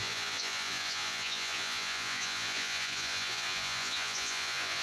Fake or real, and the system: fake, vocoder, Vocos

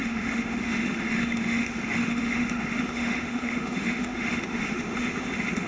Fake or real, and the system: fake, autoencoder, DAC-VAE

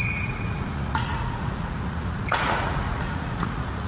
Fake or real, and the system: fake, vocoder, Vocos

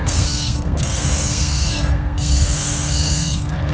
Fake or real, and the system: fake, codec, SNAC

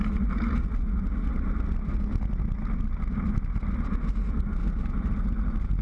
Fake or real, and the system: real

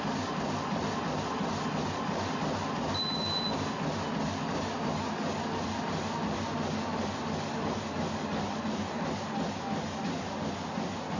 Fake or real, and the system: real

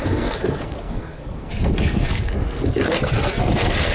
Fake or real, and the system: fake, codec, SNAC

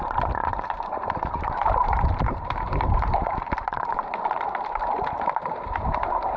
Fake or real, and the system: fake, vocoder, BigVGAN v2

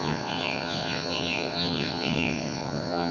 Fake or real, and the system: fake, vocoder, WaveNeXt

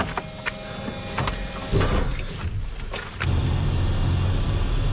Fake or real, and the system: real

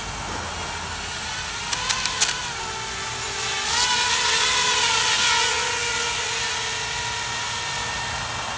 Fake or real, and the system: real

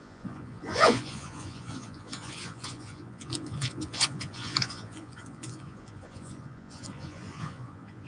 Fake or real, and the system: fake, vocoder, Vocos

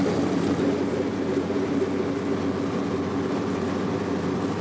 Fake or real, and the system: real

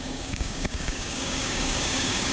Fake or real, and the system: fake, codec, DAC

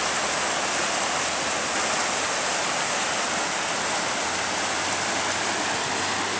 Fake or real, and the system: real